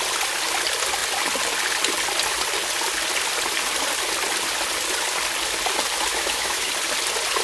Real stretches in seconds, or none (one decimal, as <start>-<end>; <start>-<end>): 0.0-6.1; 6.7-7.4